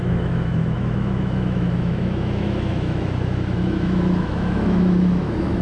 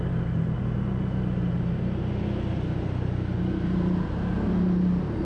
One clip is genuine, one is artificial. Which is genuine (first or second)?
second